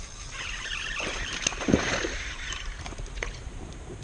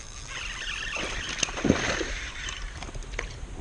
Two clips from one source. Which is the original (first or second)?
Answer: second